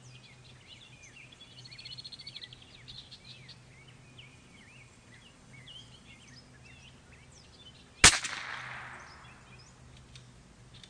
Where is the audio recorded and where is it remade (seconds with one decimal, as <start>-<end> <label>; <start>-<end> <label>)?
0.0-0.7 recorded; 0.7-2.4 remade; 2.4-4.3 recorded; 4.3-6.3 remade; 6.3-10.9 recorded